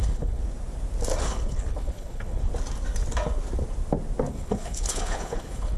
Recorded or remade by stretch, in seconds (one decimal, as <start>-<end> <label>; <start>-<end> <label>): 0.0-0.4 remade; 0.4-1.2 recorded; 1.2-2.5 remade; 2.5-4.3 recorded; 4.3-5.8 remade